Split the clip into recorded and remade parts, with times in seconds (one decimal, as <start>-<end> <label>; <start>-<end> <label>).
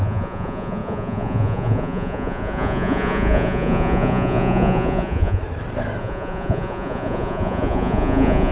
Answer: 0.0-5.4 remade; 5.4-6.0 recorded; 6.0-8.5 remade